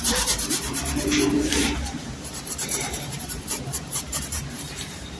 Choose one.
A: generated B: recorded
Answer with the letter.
A